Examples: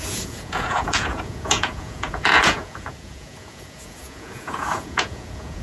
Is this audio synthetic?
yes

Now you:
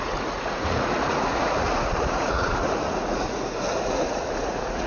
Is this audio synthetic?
yes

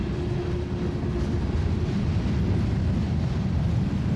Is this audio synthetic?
no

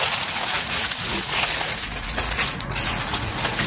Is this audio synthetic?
yes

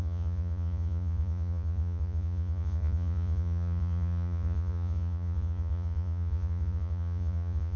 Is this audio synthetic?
yes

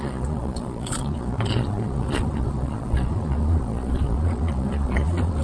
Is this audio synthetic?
yes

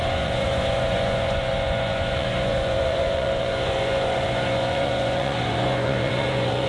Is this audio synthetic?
yes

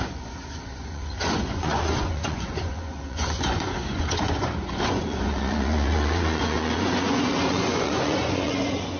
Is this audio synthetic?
yes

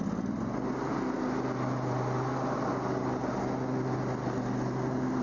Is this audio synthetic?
no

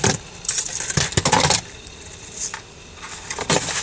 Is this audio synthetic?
no